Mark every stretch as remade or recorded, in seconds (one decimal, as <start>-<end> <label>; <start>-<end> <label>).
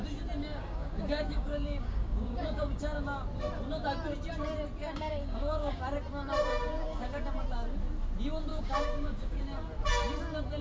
0.0-0.4 recorded; 0.4-3.0 remade; 3.0-4.8 recorded; 4.8-5.8 remade; 5.8-6.4 recorded; 6.4-7.2 remade; 7.2-8.5 recorded; 8.5-9.4 remade; 9.4-10.6 recorded